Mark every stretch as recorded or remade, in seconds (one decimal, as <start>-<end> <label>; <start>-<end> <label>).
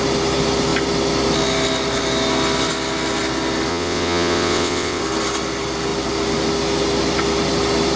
0.0-3.7 recorded; 3.7-5.0 remade; 5.0-8.0 recorded